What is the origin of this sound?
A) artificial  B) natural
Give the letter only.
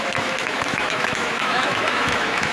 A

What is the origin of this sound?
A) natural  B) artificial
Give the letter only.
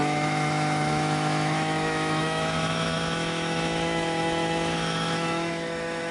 B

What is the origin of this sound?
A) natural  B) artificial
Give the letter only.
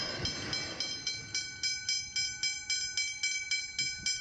A